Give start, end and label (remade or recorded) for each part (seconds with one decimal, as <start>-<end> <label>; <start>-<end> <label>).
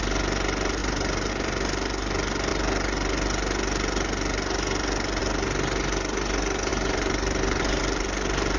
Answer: 0.0-0.8 recorded; 0.8-1.3 remade; 1.3-6.7 recorded; 6.7-7.8 remade; 7.8-8.6 recorded